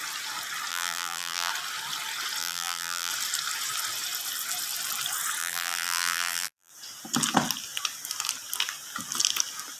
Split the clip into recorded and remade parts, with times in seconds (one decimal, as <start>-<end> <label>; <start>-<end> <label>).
0.0-0.7 recorded; 0.7-1.5 remade; 1.5-2.4 recorded; 2.4-3.1 remade; 3.1-5.4 recorded; 5.4-6.7 remade; 6.7-9.8 recorded